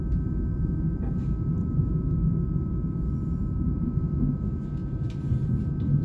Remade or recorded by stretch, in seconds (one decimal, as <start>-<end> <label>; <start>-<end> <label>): 0.0-0.5 recorded; 0.5-2.3 remade; 2.3-3.4 recorded; 3.4-4.0 remade; 4.0-4.8 recorded; 4.8-5.5 remade; 5.5-6.0 recorded